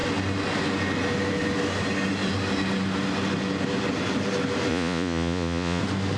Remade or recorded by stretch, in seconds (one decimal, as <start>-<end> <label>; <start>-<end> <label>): 0.0-4.7 recorded; 4.7-5.8 remade; 5.8-6.2 recorded